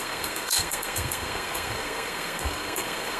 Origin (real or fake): fake